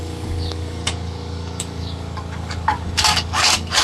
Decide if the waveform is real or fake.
fake